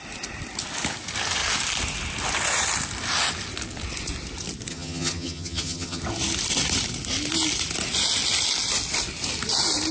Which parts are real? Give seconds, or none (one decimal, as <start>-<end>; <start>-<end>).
0.0-4.7; 6.0-9.9